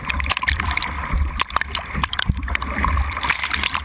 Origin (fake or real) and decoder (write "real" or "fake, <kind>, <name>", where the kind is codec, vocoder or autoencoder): fake, vocoder, BigVGAN v2